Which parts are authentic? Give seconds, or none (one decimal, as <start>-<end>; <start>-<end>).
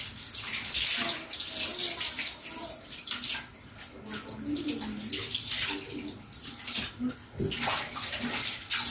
0.0-8.9